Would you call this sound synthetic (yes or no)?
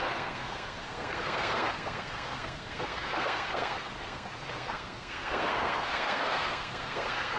yes